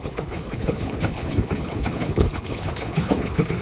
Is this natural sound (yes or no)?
no